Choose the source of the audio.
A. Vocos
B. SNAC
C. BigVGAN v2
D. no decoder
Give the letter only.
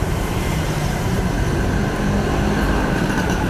C